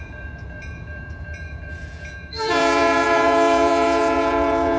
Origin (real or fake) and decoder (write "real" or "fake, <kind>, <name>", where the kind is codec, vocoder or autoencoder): fake, vocoder, Vocos